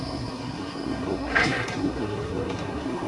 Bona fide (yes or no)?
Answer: no